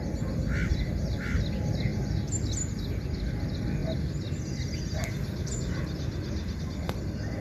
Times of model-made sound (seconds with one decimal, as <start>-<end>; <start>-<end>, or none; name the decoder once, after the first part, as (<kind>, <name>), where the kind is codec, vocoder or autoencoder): 0.7-1.2 (vocoder, BigVGAN v2)